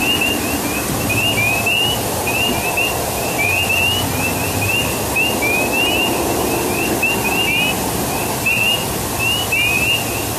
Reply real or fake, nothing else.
real